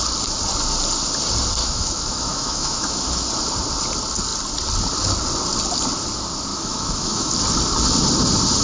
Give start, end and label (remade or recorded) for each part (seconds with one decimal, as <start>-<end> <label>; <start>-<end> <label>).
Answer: 0.0-1.6 recorded; 1.6-3.3 remade; 3.3-6.5 recorded; 6.5-7.3 remade; 7.3-8.6 recorded